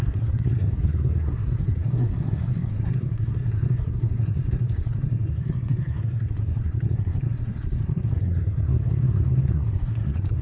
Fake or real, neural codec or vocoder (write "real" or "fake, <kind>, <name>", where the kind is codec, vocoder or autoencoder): fake, codec, SNAC